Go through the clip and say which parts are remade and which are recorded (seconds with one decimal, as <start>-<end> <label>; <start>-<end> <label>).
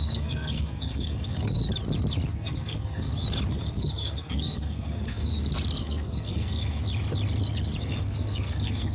0.0-1.6 remade; 1.6-2.3 recorded; 2.3-3.1 remade; 3.1-3.8 recorded; 3.8-5.3 remade; 5.3-5.8 recorded; 5.8-6.8 remade; 6.8-7.8 recorded; 7.8-8.9 remade